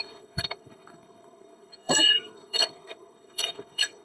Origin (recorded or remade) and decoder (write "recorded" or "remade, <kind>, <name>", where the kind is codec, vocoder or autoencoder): remade, codec, SNAC